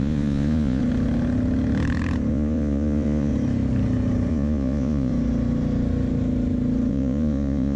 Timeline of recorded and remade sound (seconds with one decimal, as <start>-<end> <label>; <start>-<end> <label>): 0.0-0.8 remade; 0.8-2.3 recorded; 2.3-3.3 remade; 3.3-4.3 recorded; 4.3-5.1 remade; 5.1-6.9 recorded; 6.9-7.8 remade